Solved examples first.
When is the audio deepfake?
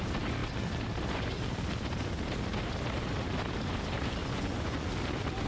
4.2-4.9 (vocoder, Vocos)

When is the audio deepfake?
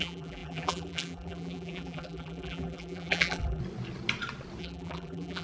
0.0-3.6 (vocoder, BigVGAN v2); 4.6-5.4